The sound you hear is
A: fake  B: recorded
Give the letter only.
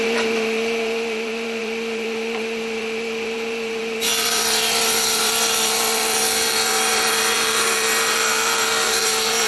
A